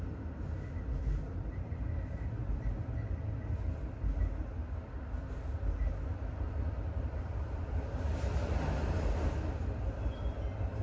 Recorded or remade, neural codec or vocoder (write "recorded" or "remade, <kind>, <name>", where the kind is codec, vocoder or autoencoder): recorded